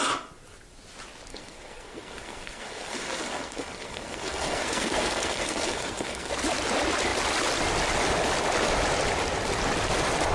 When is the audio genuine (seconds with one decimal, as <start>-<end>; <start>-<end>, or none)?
0.0-1.3; 6.3-10.3